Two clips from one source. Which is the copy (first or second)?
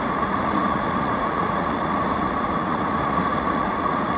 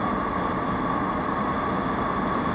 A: first